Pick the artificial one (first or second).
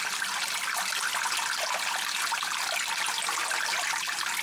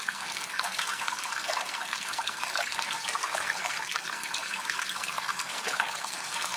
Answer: second